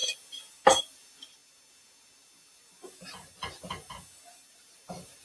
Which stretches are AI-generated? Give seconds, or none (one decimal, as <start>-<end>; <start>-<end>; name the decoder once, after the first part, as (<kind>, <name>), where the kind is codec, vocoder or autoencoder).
none